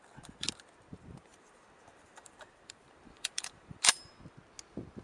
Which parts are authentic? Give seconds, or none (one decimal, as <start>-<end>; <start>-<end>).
0.0-1.3; 4.1-5.0